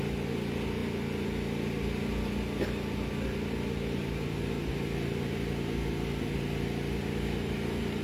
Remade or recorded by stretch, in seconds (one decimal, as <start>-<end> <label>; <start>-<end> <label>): 0.0-8.0 recorded